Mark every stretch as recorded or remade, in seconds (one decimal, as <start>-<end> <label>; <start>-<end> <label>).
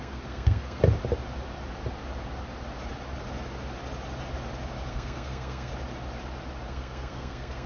0.0-0.8 remade; 0.8-4.9 recorded; 4.9-5.7 remade; 5.7-6.7 recorded; 6.7-7.7 remade